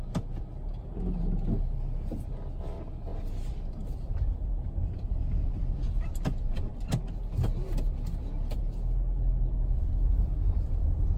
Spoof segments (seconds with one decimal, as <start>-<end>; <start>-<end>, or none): none